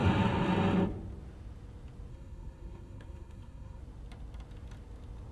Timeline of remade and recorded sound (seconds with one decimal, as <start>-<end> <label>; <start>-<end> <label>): 0.0-2.1 recorded; 2.1-3.8 remade; 3.8-5.3 recorded